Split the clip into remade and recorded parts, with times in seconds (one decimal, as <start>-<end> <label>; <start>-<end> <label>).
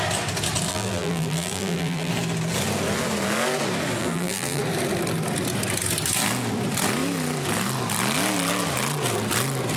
0.0-0.7 recorded; 0.7-2.1 remade; 2.1-4.0 recorded; 4.0-4.6 remade; 4.6-9.8 recorded